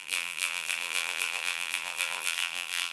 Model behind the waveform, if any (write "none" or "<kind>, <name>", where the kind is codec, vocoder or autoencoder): vocoder, BigVGAN v2